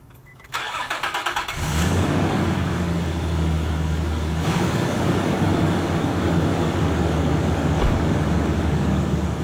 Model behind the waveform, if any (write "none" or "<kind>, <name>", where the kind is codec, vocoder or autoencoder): codec, DAC